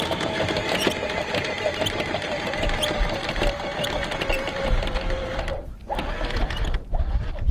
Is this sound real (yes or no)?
no